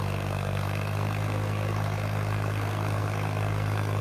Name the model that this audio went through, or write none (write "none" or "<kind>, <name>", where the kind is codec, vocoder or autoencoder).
codec, SNAC